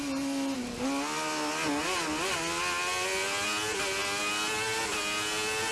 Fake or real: real